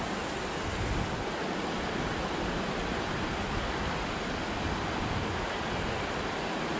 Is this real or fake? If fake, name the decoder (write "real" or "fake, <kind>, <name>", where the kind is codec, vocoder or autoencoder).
real